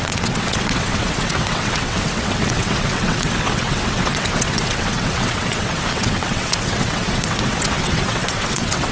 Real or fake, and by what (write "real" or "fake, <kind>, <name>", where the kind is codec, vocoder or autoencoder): fake, vocoder, WaveNeXt